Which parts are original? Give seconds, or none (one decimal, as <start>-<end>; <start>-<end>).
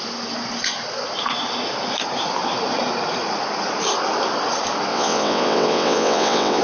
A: 0.0-4.9